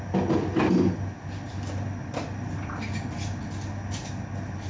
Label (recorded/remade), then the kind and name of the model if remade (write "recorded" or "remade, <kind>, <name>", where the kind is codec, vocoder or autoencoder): recorded